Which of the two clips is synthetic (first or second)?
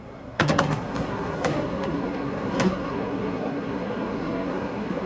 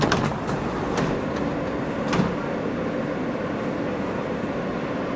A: first